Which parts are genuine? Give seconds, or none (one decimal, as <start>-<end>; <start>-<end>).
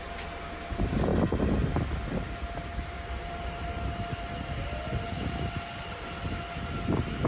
0.0-7.3